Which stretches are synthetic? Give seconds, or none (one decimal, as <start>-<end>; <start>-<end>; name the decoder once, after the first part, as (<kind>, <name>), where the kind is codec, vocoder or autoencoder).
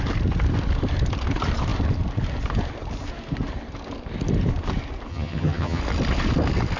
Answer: 5.1-5.8 (vocoder, HiFi-GAN)